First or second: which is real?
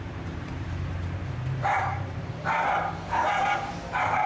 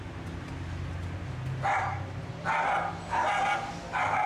second